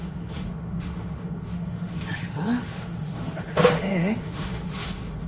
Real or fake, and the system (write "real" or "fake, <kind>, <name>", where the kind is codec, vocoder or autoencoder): fake, autoencoder, DAC-VAE